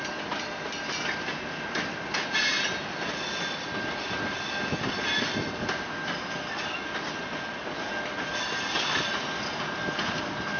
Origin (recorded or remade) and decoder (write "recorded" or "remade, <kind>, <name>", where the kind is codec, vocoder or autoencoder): recorded